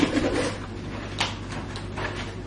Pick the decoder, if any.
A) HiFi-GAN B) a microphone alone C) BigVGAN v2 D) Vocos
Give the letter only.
B